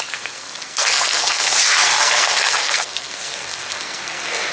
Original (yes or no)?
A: no